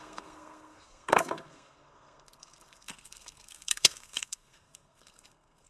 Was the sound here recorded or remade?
remade